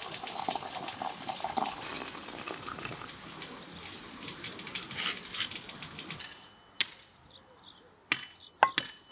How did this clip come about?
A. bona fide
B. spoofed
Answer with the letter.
A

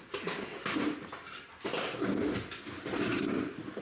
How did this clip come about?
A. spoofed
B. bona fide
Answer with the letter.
B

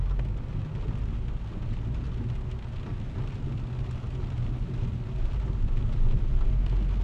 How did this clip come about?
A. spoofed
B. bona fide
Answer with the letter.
B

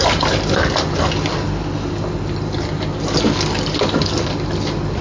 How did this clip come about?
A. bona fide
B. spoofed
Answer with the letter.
A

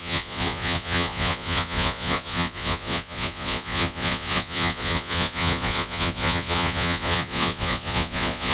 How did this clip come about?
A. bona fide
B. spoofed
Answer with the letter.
B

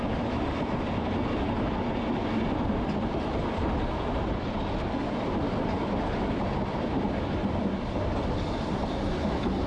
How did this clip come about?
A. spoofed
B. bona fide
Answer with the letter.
B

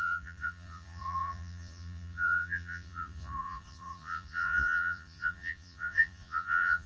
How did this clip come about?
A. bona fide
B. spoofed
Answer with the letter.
B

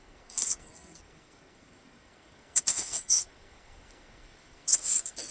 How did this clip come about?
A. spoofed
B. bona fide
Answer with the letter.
A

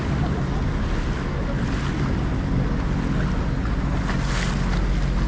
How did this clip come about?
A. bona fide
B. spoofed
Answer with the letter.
A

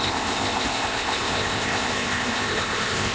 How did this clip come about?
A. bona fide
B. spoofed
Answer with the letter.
B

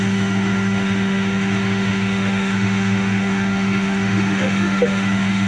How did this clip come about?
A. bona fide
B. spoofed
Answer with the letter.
B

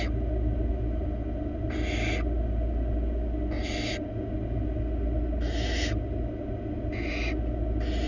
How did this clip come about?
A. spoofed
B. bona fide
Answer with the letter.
B